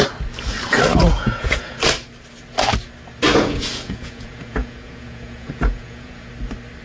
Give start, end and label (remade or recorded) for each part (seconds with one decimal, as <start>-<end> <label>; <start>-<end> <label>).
0.0-1.0 recorded; 1.0-1.8 remade; 1.8-3.3 recorded; 3.3-6.3 remade; 6.3-6.8 recorded